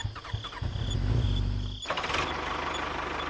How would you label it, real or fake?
real